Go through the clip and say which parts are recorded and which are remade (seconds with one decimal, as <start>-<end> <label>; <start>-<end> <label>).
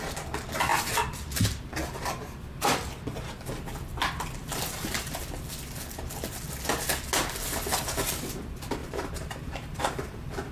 0.0-7.7 recorded; 7.7-8.3 remade; 8.3-8.8 recorded; 8.8-10.5 remade